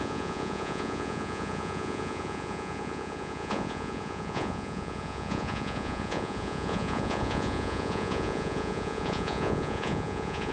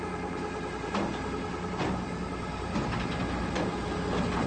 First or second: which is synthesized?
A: first